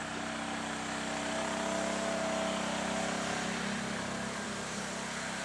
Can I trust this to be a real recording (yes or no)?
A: yes